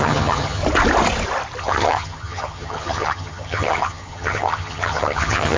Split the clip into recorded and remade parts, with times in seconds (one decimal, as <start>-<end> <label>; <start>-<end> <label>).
0.0-0.6 remade; 0.6-1.6 recorded; 1.6-5.6 remade